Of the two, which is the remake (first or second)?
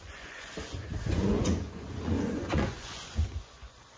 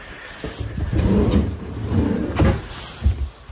first